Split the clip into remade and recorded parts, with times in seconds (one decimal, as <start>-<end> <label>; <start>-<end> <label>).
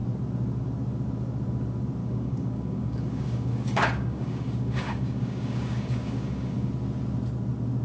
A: 0.0-2.0 recorded; 2.0-6.7 remade; 6.7-7.8 recorded